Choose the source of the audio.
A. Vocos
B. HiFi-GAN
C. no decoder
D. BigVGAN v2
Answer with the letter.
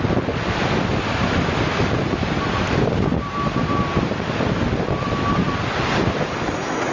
C